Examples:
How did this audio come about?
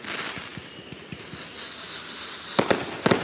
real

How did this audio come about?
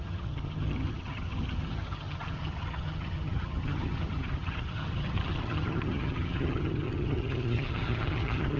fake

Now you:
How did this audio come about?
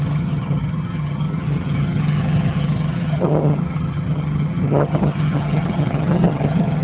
fake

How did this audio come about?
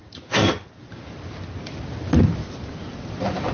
real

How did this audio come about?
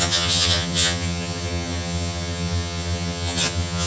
fake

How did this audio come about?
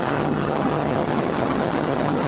fake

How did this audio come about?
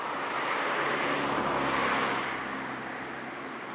real